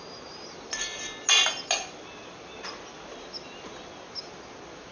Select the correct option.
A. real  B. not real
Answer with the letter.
A